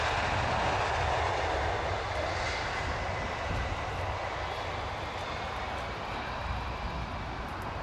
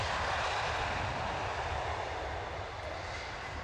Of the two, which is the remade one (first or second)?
second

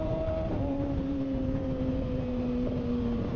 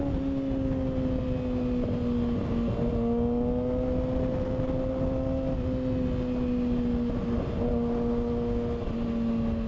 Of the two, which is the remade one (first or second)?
first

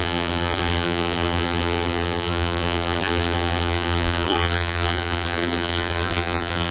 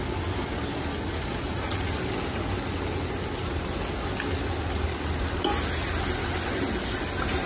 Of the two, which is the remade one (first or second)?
first